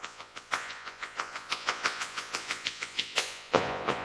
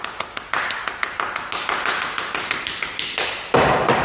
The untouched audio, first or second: second